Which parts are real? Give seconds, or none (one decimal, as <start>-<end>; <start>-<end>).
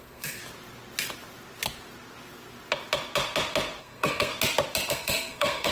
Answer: 0.4-3.8; 4.3-4.9